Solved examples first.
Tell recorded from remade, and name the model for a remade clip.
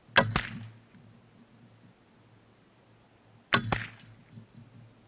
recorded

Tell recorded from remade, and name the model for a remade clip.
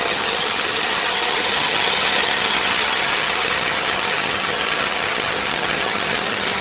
remade, vocoder, HiFi-GAN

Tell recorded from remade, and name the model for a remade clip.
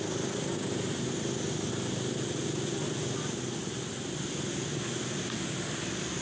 recorded